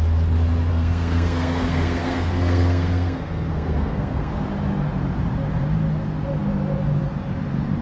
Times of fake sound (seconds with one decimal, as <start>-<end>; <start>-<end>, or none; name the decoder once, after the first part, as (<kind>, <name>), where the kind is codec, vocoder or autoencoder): 0.7-4.3 (codec, SNAC)